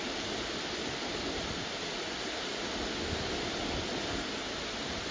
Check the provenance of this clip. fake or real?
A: real